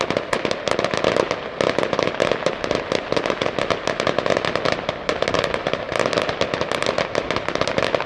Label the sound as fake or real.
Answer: real